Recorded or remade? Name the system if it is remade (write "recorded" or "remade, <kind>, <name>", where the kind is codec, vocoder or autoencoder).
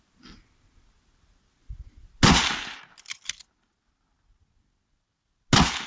recorded